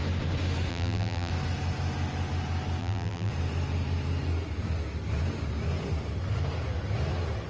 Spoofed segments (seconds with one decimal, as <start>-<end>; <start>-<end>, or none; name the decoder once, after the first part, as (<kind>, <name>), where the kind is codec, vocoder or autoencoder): 0.7-1.3 (vocoder, BigVGAN v2); 2.8-3.3